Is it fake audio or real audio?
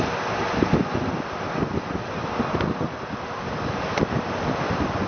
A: real